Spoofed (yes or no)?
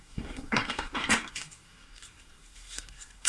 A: yes